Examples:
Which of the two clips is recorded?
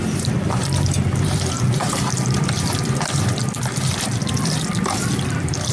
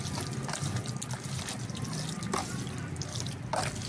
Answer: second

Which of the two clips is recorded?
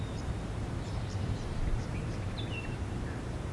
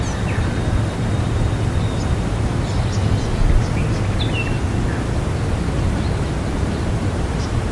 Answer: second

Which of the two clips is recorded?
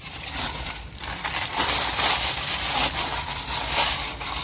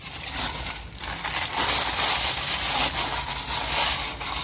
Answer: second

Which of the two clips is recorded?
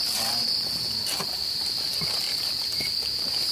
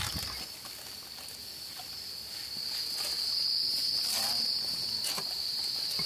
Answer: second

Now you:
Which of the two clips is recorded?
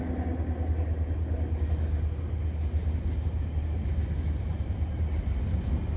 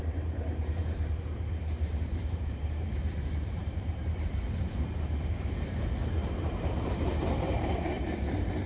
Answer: first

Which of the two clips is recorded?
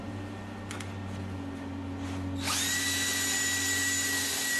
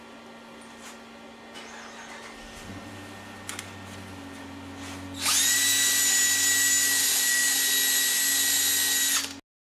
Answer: second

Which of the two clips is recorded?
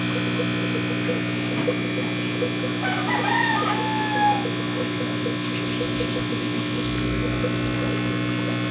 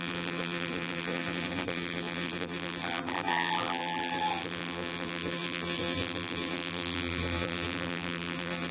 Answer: first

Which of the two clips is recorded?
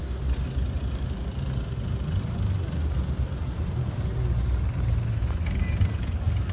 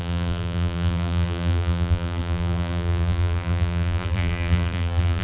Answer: first